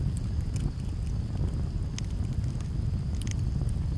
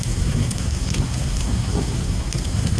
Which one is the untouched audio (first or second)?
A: first